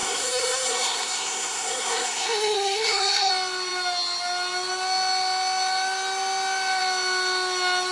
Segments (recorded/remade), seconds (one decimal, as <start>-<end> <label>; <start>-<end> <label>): 0.0-3.3 remade; 3.3-7.9 recorded